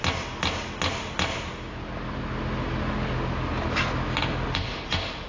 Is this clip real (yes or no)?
yes